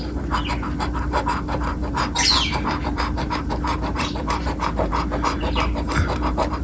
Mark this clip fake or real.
fake